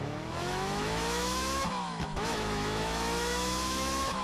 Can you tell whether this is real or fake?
fake